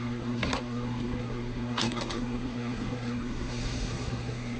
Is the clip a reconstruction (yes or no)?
yes